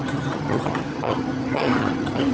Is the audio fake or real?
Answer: fake